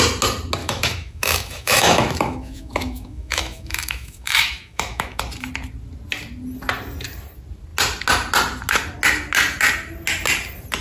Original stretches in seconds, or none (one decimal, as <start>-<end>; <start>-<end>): 0.0-0.6; 5.2-10.8